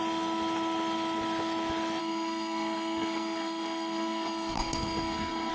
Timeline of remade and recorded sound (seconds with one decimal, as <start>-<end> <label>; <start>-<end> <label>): 0.0-2.0 recorded; 2.0-5.5 remade